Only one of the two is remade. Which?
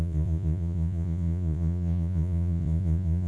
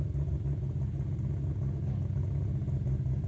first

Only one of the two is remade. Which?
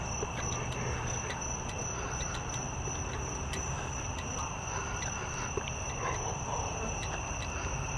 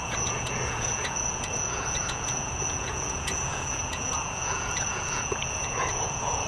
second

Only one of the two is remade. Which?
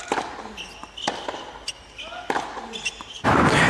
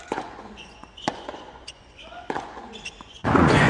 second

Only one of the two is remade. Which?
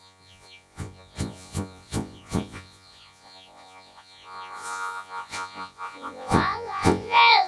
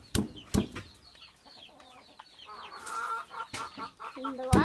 first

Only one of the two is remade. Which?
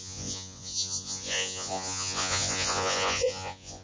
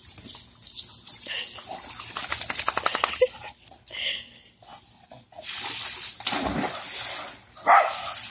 first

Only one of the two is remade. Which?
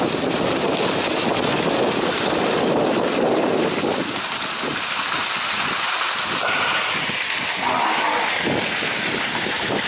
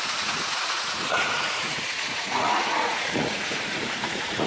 second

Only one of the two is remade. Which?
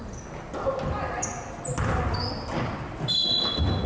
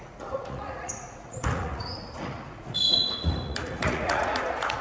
second